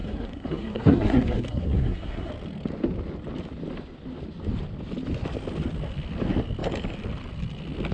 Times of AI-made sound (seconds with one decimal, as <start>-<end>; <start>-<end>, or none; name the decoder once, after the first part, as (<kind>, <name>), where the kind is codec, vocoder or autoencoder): 0.0-2.3 (codec, SNAC)